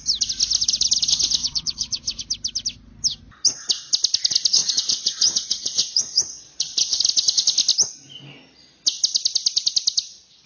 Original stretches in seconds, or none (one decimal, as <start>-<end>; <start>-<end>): 0.0-1.4; 2.2-4.6; 7.0-10.5